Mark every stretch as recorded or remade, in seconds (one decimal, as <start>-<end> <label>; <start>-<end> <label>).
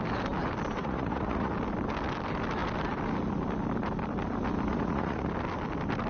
0.0-0.8 recorded; 0.8-1.5 remade; 1.5-4.7 recorded; 4.7-5.3 remade; 5.3-6.1 recorded